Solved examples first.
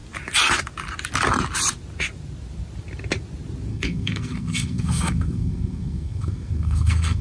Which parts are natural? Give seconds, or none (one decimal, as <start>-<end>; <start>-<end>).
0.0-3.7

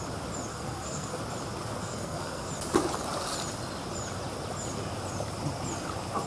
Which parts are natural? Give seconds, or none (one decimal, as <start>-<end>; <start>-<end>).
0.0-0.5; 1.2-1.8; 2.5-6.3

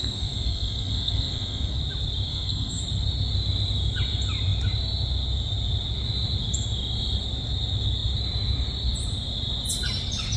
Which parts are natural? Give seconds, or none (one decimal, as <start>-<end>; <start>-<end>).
1.8-2.3; 2.8-10.4